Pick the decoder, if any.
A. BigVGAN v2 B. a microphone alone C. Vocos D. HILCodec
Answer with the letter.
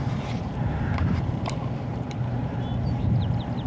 A